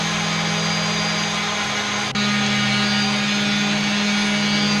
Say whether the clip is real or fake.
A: real